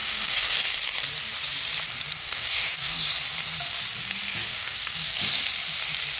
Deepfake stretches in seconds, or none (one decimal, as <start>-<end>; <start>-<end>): 0.0-0.6; 2.2-3.1; 4.5-5.2